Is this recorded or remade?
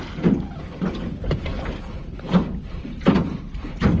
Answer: recorded